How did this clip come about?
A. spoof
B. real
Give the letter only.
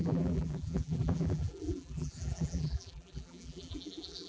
A